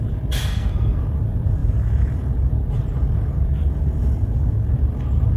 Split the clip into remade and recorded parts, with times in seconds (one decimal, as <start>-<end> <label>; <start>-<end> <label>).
0.0-0.4 recorded; 0.4-1.0 remade; 1.0-5.4 recorded